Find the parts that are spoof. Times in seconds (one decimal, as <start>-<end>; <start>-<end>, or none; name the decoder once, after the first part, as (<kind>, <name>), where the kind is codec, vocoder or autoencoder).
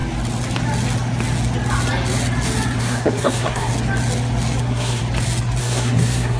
2.8-3.7 (codec, SNAC); 4.6-5.0; 5.6-6.4